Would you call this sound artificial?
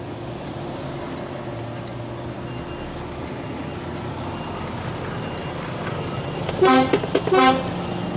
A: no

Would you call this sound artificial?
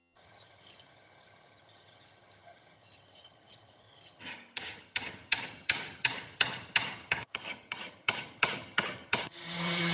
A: yes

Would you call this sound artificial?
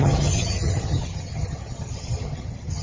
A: yes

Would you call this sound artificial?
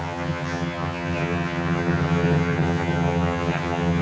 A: yes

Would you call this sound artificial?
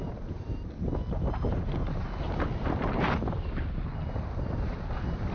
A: no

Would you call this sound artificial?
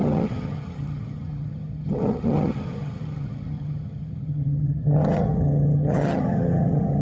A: yes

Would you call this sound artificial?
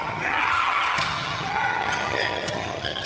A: yes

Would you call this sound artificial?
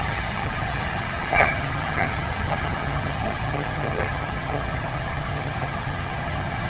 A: yes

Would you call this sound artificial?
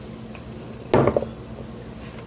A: no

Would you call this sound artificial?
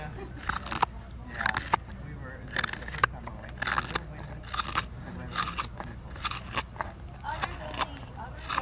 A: no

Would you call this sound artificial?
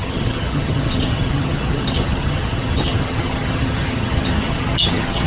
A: yes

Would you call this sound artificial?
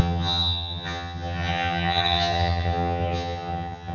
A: yes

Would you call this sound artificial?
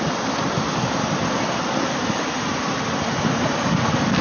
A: no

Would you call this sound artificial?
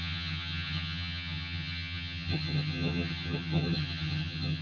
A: yes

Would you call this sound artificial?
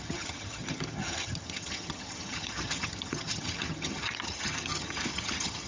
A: yes